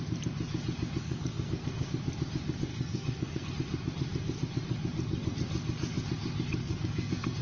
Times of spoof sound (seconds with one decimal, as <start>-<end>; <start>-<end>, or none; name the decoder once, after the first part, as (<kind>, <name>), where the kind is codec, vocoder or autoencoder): 1.0-1.9 (codec, SNAC); 2.7-3.5; 6.6-7.4